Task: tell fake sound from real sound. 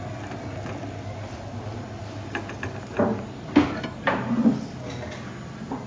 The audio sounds real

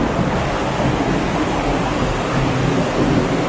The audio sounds real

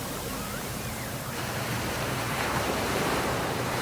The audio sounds fake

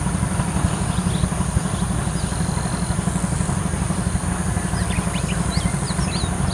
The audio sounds real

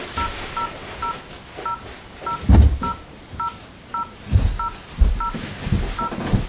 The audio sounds real